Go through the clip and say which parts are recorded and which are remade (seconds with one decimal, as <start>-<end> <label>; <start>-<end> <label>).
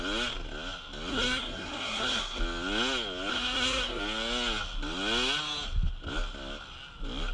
0.0-1.1 recorded; 1.1-2.4 remade; 2.4-3.3 recorded; 3.3-4.0 remade; 4.0-7.3 recorded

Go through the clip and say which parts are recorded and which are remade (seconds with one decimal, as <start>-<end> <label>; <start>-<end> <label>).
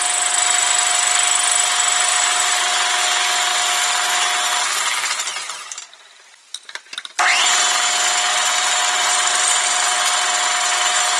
0.0-2.1 recorded; 2.1-2.7 remade; 2.7-8.3 recorded; 8.3-10.0 remade; 10.0-11.2 recorded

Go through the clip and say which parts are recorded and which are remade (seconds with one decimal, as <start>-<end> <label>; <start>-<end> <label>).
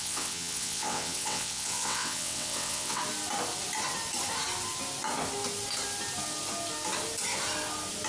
0.0-3.0 remade; 3.0-8.1 recorded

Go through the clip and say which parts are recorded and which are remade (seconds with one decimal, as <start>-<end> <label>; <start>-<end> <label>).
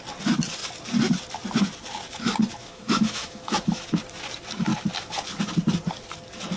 0.0-2.5 recorded; 2.5-4.0 remade; 4.0-6.6 recorded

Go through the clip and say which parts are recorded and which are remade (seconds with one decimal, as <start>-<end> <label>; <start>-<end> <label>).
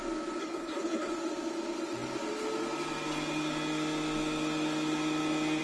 0.0-0.4 recorded; 0.4-1.1 remade; 1.1-5.6 recorded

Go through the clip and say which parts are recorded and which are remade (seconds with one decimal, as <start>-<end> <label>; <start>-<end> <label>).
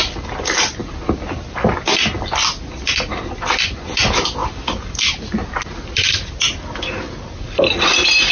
0.0-8.3 recorded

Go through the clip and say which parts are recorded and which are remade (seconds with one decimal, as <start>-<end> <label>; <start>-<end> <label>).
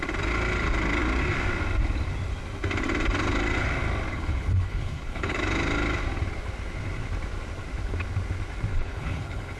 0.0-4.1 recorded; 4.1-5.4 remade; 5.4-8.7 recorded; 8.7-9.6 remade